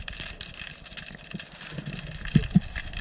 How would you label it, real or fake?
real